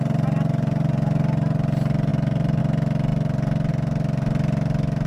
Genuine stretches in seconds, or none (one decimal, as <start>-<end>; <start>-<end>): 0.0-2.1; 2.6-5.1